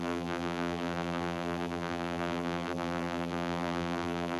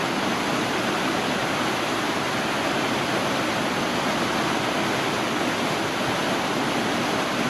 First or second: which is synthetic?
first